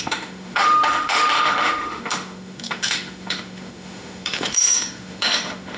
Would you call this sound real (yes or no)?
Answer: no